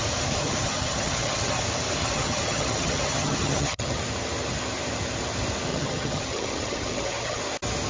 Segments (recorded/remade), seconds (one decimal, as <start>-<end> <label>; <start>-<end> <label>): 0.0-0.4 recorded; 0.4-1.6 remade; 1.6-2.0 recorded; 2.0-4.0 remade; 4.0-5.7 recorded; 5.7-7.4 remade; 7.4-7.9 recorded